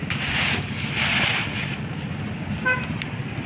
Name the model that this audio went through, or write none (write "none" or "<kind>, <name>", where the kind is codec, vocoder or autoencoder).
none